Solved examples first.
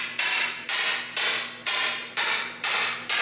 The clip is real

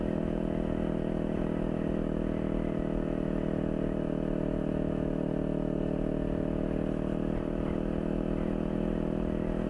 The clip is real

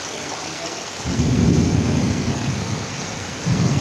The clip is fake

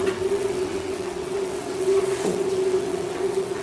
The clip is fake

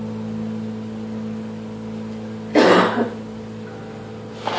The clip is real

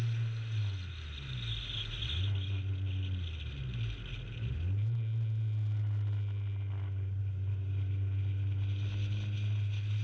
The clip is real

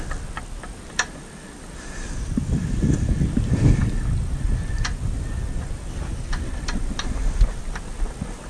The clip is real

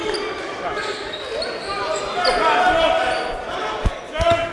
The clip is real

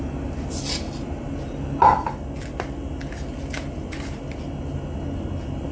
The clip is real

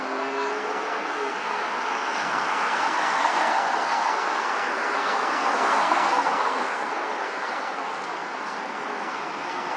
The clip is fake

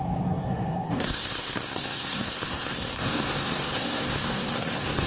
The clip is fake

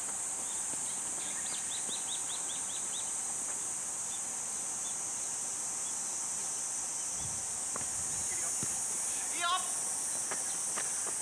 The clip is real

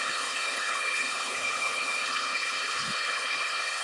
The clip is fake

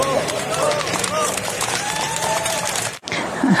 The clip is fake